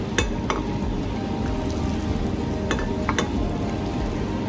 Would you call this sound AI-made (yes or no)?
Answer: no